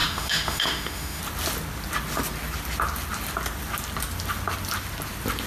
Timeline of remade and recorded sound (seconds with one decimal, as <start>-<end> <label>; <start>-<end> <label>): 0.0-1.2 remade; 1.2-5.5 recorded